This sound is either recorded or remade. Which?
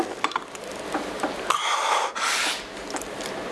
recorded